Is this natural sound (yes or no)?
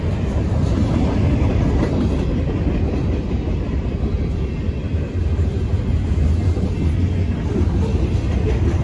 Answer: yes